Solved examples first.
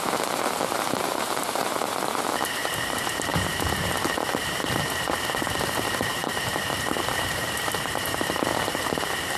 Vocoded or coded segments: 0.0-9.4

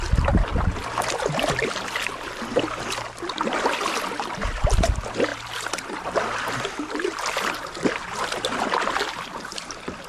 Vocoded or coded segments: none